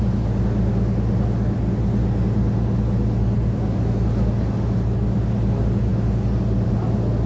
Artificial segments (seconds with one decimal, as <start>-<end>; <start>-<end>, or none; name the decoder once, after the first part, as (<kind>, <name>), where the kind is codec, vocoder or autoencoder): none